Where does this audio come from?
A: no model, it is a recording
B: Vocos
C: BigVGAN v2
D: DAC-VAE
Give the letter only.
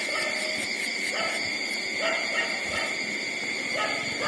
A